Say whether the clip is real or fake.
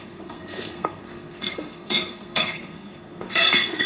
fake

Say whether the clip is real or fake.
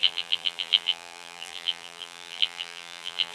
fake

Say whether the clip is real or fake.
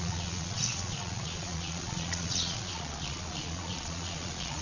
fake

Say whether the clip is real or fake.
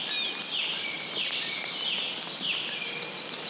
real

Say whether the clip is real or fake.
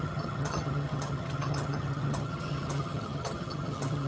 fake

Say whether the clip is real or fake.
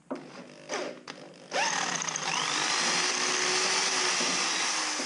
real